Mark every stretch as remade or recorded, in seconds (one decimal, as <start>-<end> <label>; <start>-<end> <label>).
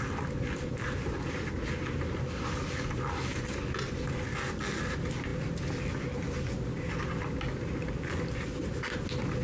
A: 0.0-9.4 recorded